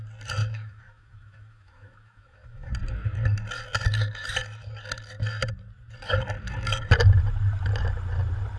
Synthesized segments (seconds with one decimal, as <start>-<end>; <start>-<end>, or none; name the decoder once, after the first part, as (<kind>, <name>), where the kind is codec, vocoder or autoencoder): 0.4-2.7 (autoencoder, DAC-VAE)